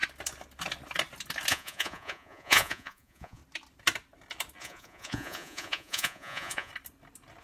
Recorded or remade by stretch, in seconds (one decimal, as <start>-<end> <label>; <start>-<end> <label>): 0.0-1.5 recorded; 1.5-3.4 remade; 3.4-4.6 recorded; 4.6-6.7 remade; 6.7-7.4 recorded